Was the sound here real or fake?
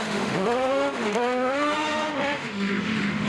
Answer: fake